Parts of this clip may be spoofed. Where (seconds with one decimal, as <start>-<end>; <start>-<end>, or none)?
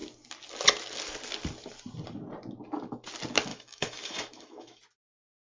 3.5-4.8